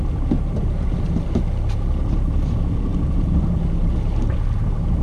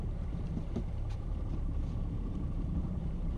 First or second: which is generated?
second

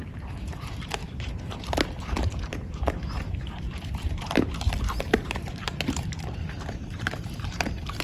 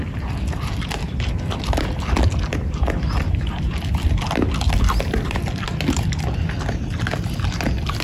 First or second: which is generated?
first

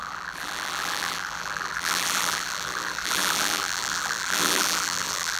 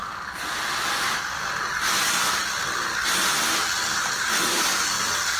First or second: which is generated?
first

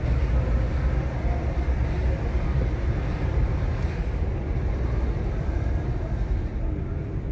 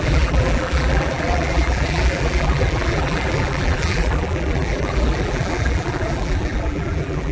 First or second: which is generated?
second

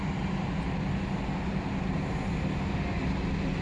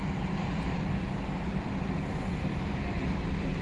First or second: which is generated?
second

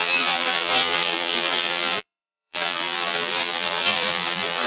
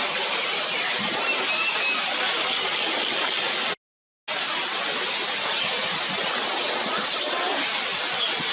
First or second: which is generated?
first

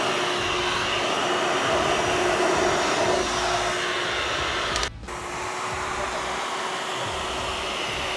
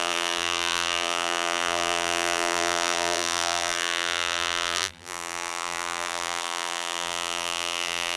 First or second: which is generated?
second